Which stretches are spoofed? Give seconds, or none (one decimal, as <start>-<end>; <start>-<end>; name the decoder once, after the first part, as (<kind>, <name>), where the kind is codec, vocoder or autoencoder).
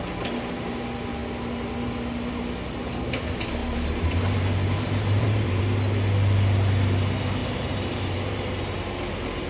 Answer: 3.6-5.6 (vocoder, BigVGAN v2); 7.4-9.0